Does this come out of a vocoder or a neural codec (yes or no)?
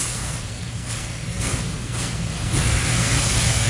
yes